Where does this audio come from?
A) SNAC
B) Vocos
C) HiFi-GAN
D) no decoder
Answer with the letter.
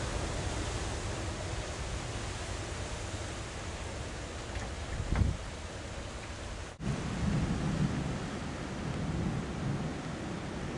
D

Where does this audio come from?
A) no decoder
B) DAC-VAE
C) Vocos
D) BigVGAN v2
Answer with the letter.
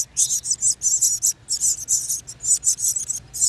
A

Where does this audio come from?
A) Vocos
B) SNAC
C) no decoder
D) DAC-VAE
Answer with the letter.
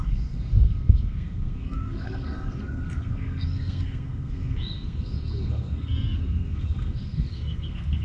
B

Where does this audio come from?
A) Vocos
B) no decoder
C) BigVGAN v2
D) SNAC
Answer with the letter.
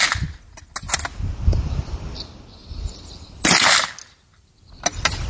B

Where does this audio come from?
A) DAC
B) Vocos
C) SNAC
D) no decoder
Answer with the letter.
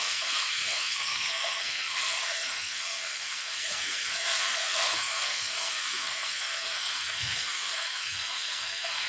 C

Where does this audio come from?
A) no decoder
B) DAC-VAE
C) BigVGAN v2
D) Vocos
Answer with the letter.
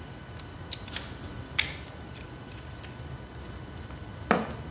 C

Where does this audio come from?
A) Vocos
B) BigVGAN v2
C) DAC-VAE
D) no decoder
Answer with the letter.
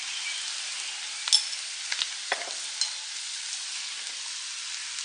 D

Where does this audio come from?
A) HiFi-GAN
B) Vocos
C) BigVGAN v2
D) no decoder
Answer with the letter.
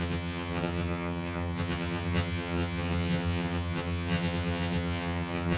A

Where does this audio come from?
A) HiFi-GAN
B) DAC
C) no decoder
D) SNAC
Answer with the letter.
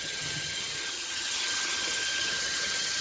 A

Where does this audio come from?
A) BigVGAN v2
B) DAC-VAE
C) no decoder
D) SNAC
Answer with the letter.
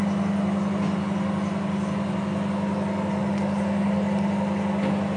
C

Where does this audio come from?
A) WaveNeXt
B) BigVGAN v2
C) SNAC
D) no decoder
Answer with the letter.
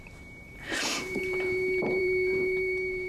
B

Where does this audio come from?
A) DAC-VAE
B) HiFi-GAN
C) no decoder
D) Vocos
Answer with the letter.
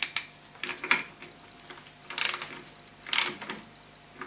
C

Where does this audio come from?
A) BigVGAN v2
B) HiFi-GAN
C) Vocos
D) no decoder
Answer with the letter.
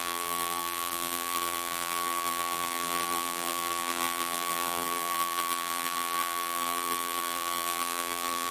A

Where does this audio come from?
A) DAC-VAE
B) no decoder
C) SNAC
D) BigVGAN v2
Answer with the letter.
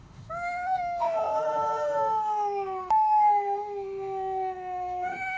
A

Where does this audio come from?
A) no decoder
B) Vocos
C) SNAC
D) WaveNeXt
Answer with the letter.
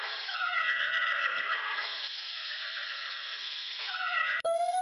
C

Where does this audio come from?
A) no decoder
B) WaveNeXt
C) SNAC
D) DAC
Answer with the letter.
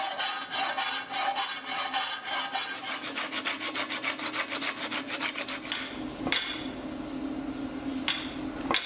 A